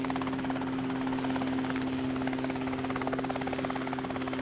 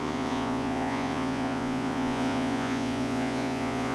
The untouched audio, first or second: first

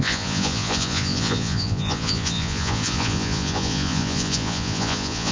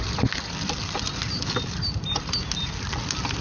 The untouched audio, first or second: second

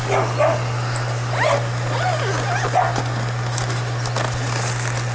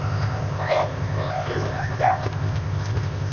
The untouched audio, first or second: first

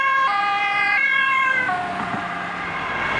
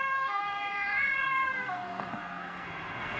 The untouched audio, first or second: first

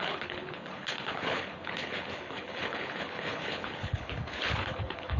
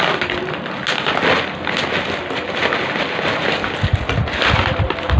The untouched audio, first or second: second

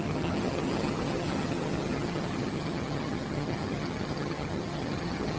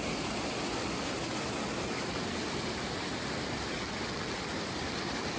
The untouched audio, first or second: second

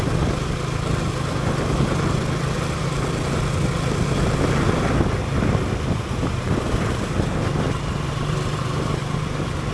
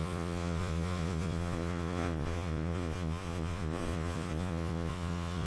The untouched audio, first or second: first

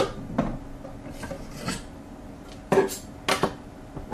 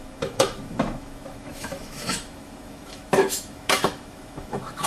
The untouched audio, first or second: first